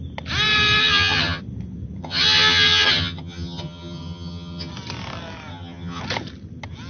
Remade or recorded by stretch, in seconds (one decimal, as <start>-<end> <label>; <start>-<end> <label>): 0.0-0.8 recorded; 0.8-1.4 remade; 1.4-2.0 recorded; 2.0-4.7 remade; 4.7-5.5 recorded; 5.5-6.0 remade; 6.0-6.9 recorded